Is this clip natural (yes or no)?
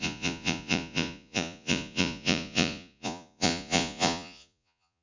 no